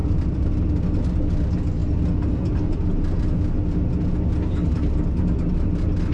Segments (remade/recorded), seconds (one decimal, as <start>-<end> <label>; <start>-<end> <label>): 0.0-0.6 remade; 0.6-6.1 recorded